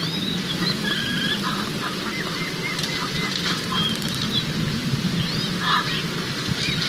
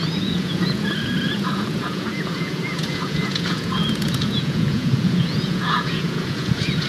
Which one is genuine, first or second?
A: first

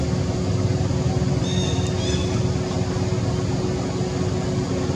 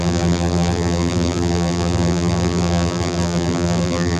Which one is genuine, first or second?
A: first